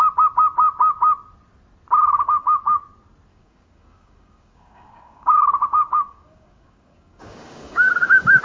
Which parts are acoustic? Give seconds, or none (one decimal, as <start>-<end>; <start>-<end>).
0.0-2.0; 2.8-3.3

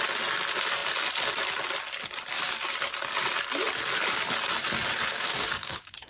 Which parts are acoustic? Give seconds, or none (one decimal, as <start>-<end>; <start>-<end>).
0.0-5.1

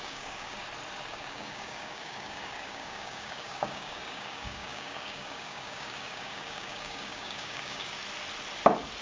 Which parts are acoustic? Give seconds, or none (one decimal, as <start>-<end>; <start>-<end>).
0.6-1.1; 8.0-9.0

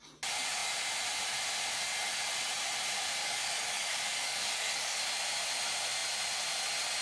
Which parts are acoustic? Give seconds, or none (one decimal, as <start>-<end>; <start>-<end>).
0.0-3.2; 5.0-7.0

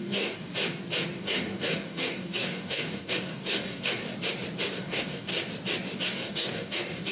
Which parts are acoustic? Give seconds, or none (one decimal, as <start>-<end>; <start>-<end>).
0.5-1.1; 4.0-4.7; 5.3-6.0